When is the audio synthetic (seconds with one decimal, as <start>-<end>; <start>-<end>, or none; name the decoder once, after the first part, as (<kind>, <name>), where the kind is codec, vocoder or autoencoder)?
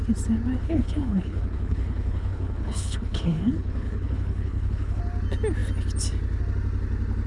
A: 0.6-5.0 (codec, HILCodec)